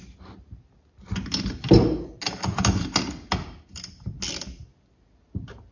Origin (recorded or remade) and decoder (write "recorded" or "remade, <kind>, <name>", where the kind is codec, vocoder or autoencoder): recorded